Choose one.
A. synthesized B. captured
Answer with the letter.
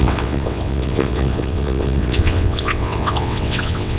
A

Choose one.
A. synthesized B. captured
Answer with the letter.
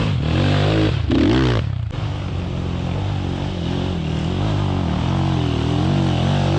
B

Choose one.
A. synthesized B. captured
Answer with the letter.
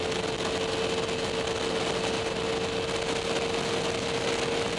B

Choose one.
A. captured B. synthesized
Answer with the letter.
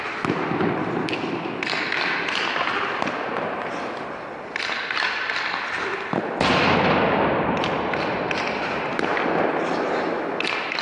A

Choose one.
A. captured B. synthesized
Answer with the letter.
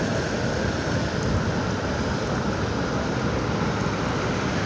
A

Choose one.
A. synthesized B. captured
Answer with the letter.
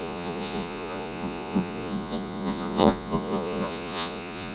A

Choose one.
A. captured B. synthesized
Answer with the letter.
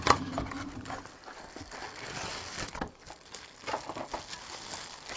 A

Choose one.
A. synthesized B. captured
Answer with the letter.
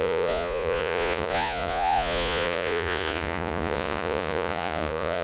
A